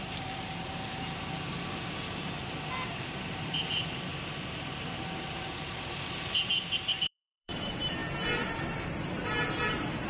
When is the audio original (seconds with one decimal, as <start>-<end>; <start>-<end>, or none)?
4.1-4.8; 8.0-9.1